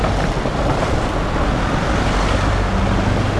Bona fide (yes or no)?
yes